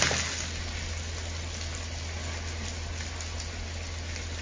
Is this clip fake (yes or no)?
no